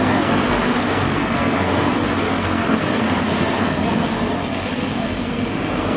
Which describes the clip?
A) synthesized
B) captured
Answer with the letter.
A